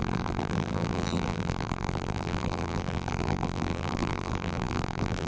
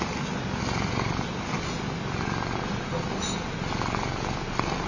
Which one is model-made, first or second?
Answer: first